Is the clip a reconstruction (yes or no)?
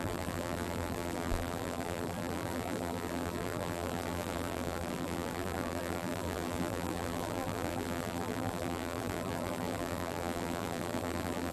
yes